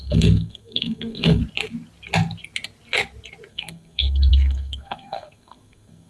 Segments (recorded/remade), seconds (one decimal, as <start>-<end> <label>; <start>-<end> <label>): 0.0-1.4 remade; 1.4-3.5 recorded; 3.5-6.1 remade